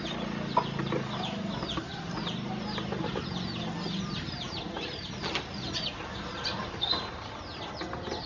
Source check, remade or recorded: recorded